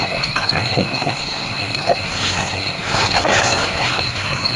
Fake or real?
fake